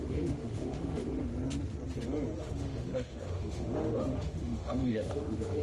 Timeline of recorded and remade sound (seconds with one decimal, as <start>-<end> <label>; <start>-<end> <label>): 0.0-1.3 remade; 1.3-2.4 recorded; 2.4-5.6 remade